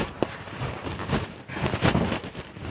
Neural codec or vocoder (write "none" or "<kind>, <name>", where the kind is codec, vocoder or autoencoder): vocoder, BigVGAN v2